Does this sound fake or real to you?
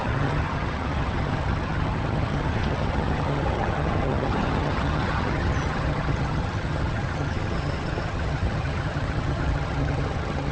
fake